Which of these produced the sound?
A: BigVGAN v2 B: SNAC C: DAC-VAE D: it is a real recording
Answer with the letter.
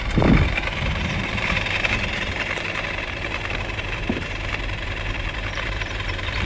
A